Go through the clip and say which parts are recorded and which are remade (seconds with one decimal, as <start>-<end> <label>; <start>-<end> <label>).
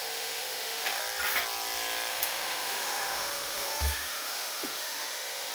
0.0-1.0 remade; 1.0-2.1 recorded; 2.1-5.5 remade